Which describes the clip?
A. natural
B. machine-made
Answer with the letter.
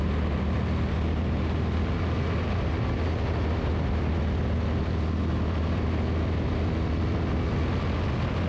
A